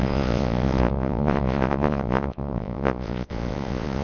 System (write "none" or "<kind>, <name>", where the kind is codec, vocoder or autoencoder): vocoder, Vocos